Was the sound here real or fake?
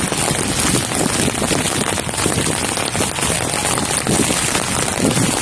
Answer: real